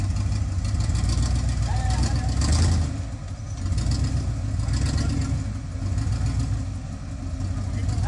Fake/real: real